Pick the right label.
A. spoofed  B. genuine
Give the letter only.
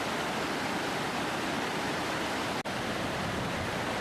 B